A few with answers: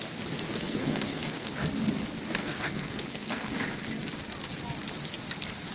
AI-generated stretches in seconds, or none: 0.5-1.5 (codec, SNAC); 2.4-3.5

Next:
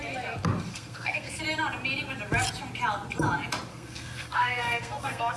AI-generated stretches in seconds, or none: 0.7-1.4 (codec, SNAC); 3.7-5.4